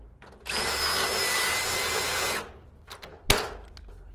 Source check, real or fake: real